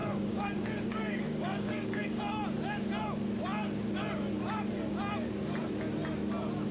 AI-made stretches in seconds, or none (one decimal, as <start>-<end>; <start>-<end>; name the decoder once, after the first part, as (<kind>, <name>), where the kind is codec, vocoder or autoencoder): 0.0-2.2 (codec, DAC)